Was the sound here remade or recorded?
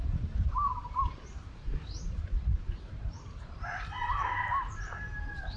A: remade